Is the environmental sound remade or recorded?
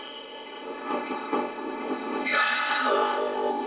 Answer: remade